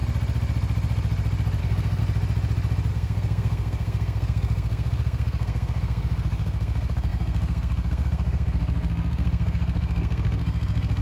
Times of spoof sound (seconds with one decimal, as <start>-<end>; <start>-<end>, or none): 1.6-2.0; 2.9-11.0